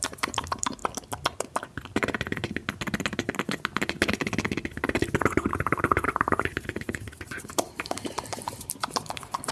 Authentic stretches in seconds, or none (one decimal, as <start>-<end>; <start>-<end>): 0.8-5.5